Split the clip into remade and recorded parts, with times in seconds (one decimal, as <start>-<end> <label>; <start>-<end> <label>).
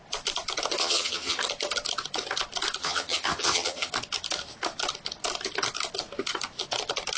0.0-0.8 recorded; 0.8-1.4 remade; 1.4-2.8 recorded; 2.8-3.9 remade; 3.9-7.2 recorded